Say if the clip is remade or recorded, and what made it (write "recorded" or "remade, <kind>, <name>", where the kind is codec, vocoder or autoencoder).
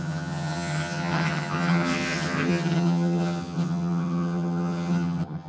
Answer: remade, vocoder, HiFi-GAN